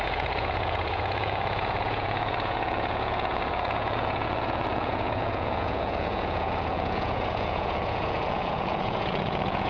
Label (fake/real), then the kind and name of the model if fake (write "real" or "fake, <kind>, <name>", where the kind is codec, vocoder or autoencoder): fake, vocoder, Vocos